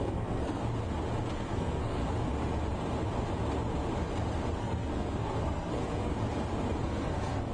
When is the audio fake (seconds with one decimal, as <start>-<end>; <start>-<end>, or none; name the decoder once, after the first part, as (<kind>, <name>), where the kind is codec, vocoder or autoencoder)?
0.0-0.6 (codec, SNAC); 1.3-2.0; 4.6-6.1; 6.8-7.5